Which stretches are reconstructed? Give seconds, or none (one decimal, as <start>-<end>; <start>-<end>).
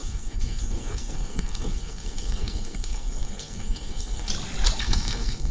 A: 0.0-4.3; 4.8-5.5